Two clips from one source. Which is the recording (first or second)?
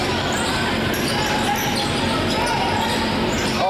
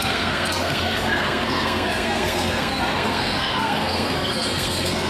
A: first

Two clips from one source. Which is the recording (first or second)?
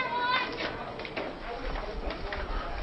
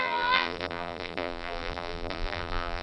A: first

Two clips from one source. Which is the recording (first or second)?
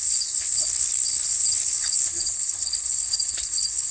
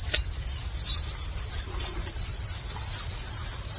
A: second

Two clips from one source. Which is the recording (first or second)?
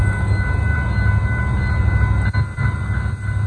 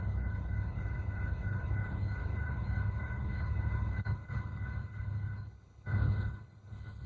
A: first